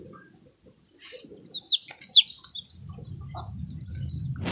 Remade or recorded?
recorded